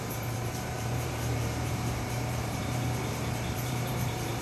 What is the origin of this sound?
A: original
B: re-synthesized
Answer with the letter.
B